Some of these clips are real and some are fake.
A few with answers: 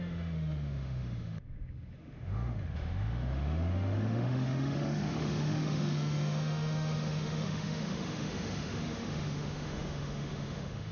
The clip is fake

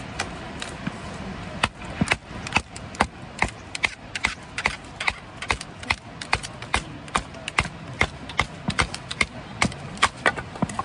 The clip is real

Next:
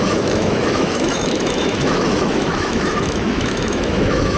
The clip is fake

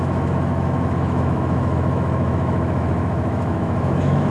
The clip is fake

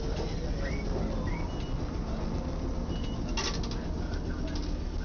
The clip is real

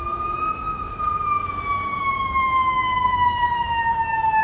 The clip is fake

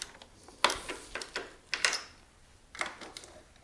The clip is real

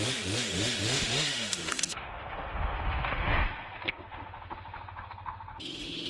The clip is fake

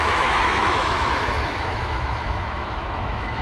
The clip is fake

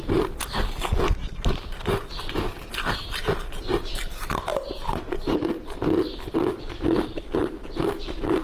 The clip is real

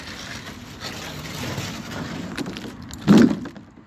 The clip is real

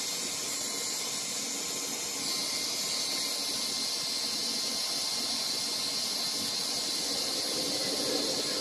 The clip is real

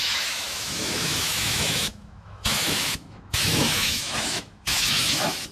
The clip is fake